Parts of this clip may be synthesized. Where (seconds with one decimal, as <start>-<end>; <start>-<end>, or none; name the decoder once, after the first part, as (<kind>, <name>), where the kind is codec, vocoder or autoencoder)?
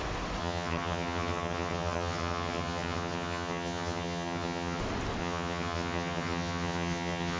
0.4-4.8 (vocoder, HiFi-GAN); 5.2-7.4